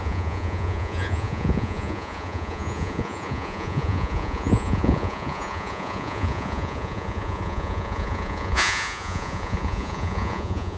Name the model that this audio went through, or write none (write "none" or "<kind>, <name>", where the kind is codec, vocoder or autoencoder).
vocoder, Vocos